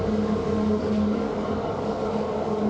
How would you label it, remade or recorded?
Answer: remade